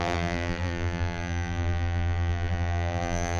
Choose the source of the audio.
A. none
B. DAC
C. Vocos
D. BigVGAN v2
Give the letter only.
D